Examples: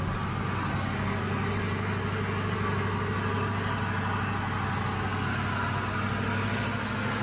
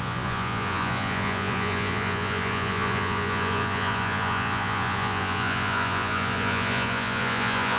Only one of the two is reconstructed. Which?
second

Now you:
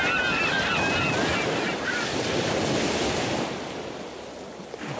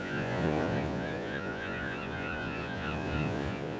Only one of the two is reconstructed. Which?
second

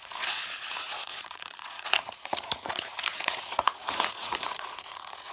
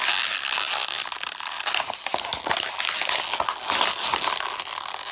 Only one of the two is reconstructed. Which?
first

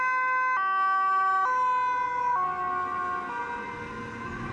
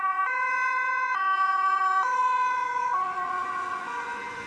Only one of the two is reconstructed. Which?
second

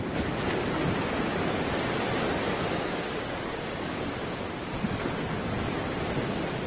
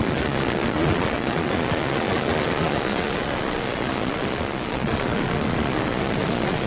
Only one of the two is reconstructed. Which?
second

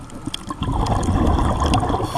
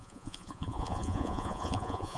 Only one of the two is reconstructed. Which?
second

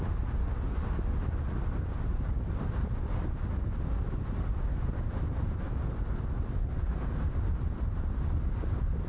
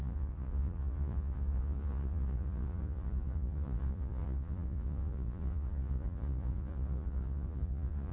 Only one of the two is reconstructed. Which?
second